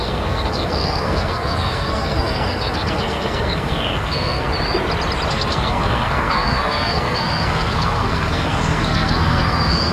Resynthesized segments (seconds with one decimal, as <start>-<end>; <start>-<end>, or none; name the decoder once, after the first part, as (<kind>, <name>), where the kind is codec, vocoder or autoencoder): 0.0-4.5 (codec, SNAC); 5.3-9.9